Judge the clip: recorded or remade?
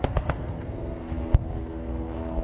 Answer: remade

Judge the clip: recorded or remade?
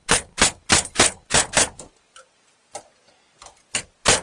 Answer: recorded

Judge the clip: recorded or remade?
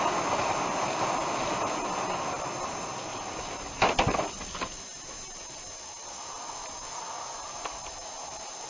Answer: recorded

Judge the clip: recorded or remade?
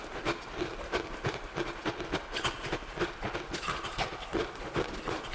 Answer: recorded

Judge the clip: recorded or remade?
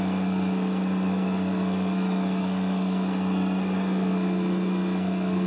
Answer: remade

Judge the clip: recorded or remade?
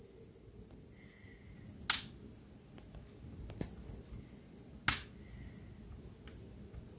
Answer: recorded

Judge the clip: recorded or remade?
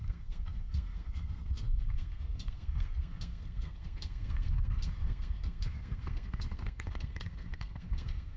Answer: remade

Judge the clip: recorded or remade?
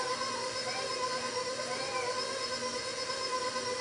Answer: recorded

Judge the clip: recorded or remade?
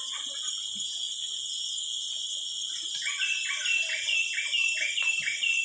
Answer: recorded